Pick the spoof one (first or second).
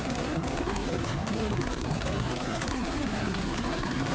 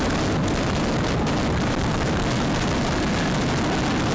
first